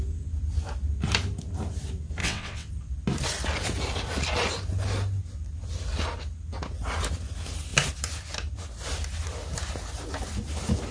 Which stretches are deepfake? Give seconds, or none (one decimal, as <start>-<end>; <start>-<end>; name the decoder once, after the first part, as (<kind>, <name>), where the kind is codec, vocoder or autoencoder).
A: 2.2-2.7 (vocoder, WaveNeXt)